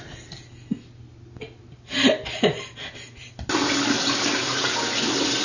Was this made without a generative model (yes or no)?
yes